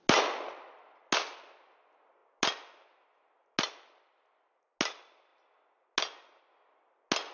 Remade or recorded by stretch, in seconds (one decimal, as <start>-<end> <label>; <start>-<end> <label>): 0.0-7.3 recorded